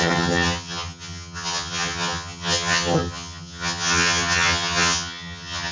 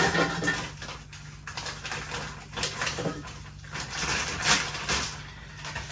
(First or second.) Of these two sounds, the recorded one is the second